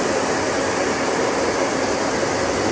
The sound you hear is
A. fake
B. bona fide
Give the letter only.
B